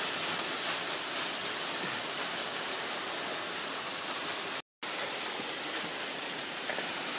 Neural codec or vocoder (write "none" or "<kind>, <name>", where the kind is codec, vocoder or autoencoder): none